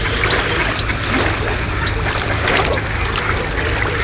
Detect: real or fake real